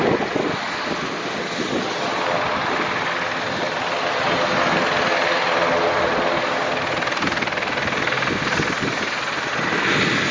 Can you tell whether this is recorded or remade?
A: recorded